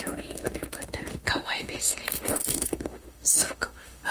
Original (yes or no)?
no